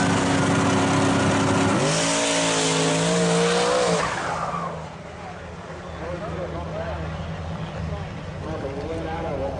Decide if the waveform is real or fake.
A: real